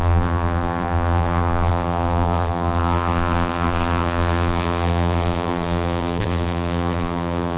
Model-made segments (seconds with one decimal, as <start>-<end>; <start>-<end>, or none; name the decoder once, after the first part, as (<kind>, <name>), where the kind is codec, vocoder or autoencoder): 0.0-7.6 (vocoder, BigVGAN v2)